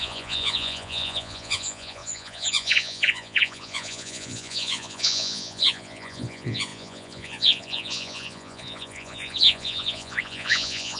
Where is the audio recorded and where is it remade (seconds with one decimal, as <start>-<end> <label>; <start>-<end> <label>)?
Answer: 0.0-11.0 remade

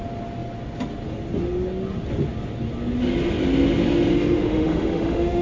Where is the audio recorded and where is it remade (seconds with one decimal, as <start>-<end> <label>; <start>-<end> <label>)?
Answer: 0.0-4.1 recorded; 4.1-5.4 remade

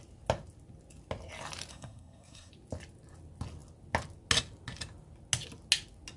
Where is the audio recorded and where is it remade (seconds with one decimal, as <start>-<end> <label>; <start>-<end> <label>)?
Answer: 0.0-1.7 recorded; 1.7-2.5 remade; 2.5-6.2 recorded

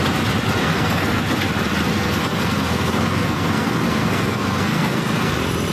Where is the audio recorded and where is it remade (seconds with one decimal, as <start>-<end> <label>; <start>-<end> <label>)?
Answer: 0.0-0.6 recorded; 0.6-1.2 remade; 1.2-1.9 recorded; 1.9-5.3 remade; 5.3-5.7 recorded

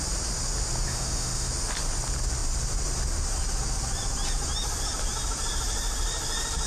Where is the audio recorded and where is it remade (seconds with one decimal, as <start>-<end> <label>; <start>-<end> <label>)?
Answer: 0.0-0.9 recorded; 0.9-1.5 remade; 1.5-6.7 recorded

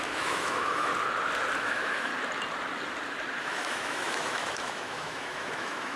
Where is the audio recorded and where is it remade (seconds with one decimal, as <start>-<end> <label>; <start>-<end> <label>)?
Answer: 0.0-0.9 remade; 0.9-1.6 recorded; 1.6-2.1 remade; 2.1-3.4 recorded; 3.4-6.0 remade